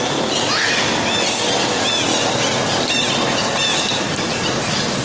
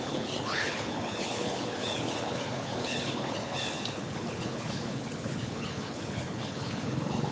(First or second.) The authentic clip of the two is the first